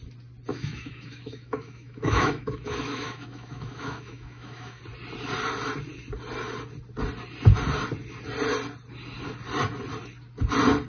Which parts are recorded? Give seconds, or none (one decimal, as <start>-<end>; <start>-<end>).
0.0-0.5; 4.8-10.9